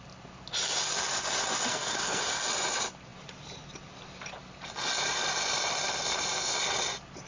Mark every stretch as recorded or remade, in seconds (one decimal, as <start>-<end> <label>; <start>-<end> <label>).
0.0-1.7 recorded; 1.7-2.2 remade; 2.2-7.3 recorded